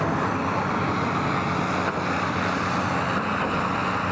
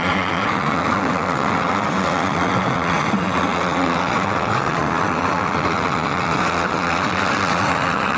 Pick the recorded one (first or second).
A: first